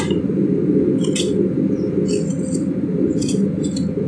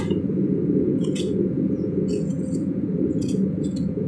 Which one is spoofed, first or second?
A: second